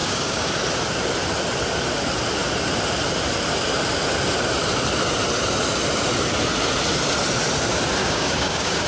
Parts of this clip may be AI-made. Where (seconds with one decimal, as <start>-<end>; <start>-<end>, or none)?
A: 0.0-0.5; 8.0-8.9